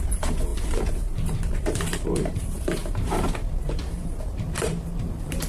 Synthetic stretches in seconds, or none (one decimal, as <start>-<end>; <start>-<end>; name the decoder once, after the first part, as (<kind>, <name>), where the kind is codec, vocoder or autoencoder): 0.0-5.5 (vocoder, BigVGAN v2)